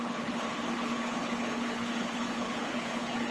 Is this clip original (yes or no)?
no